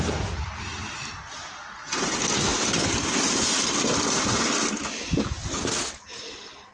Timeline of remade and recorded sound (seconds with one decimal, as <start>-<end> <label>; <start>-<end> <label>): 0.0-6.7 recorded